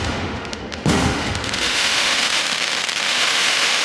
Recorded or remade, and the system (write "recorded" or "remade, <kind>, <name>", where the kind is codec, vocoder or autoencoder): remade, autoencoder, DAC-VAE